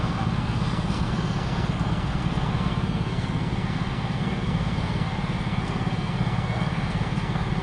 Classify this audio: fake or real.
fake